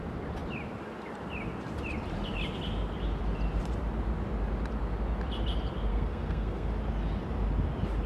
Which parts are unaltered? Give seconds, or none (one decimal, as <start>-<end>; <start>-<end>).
0.0-5.9; 6.7-8.1